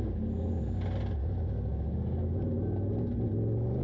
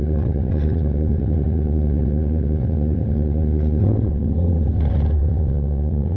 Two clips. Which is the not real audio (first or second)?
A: second